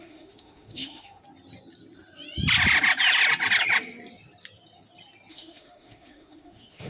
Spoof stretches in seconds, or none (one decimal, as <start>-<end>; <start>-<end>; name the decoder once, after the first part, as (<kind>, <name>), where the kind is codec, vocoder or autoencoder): 0.0-1.2 (autoencoder, DAC-VAE); 5.3-6.9